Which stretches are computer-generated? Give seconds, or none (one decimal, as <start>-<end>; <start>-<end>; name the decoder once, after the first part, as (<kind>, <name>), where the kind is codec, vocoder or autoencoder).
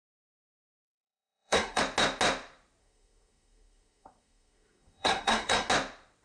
0.4-1.8 (codec, SNAC); 2.8-5.7